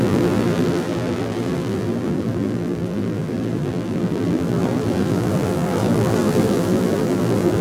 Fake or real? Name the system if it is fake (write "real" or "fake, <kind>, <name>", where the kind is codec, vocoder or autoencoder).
fake, vocoder, BigVGAN v2